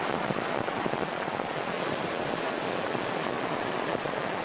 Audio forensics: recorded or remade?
remade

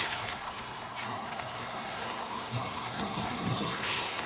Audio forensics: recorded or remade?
remade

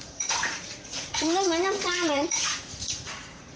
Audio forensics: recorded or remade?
remade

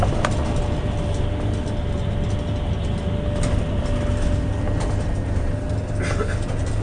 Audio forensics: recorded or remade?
recorded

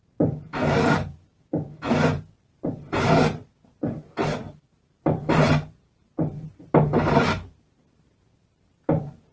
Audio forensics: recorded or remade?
remade